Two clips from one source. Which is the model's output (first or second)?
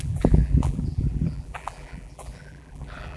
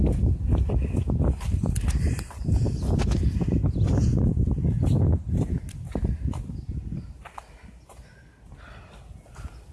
first